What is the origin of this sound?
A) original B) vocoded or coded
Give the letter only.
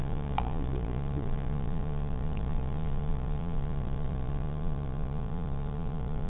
B